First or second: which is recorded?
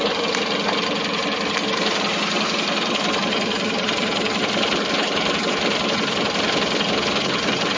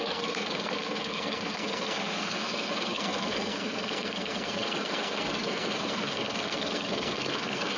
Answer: first